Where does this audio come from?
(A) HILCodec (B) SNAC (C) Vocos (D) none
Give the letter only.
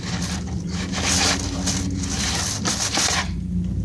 D